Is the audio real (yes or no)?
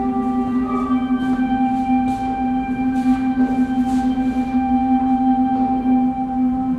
yes